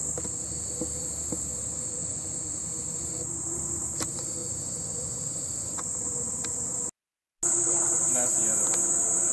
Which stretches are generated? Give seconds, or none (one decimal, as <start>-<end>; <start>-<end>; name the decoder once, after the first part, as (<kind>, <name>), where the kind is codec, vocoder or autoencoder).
2.0-2.6 (vocoder, Vocos); 4.4-5.9